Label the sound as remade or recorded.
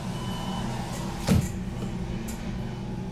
recorded